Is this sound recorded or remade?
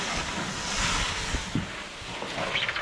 recorded